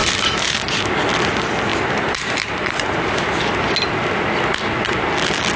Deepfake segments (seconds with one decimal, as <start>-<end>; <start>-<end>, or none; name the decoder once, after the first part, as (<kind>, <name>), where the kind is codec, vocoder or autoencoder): 0.0-0.7 (vocoder, BigVGAN v2); 1.7-3.7